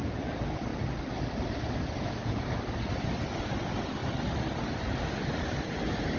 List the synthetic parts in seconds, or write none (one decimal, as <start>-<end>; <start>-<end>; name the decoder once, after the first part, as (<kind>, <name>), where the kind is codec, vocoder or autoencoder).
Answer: none